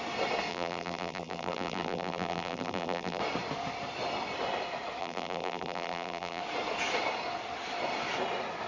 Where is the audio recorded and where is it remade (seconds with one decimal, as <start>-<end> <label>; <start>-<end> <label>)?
0.0-0.5 recorded; 0.5-3.2 remade; 3.2-5.0 recorded; 5.0-6.4 remade; 6.4-8.7 recorded